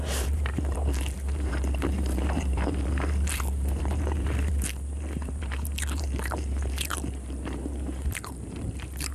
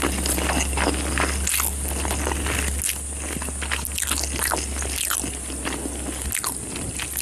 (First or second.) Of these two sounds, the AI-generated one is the first